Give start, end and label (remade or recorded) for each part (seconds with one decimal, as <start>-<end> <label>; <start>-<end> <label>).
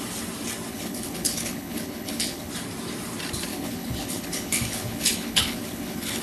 0.0-0.7 recorded; 0.7-2.5 remade; 2.5-3.5 recorded; 3.5-6.2 remade